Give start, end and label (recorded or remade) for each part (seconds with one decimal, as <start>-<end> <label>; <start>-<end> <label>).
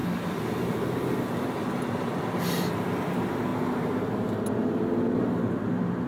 0.0-6.1 recorded